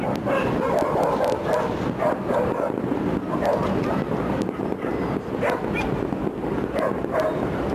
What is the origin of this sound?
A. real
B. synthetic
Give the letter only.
A